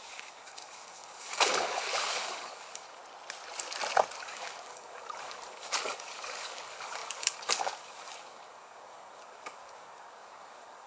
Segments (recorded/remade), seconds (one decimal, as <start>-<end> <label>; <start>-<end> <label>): 0.0-3.0 remade; 3.0-4.2 recorded; 4.2-10.9 remade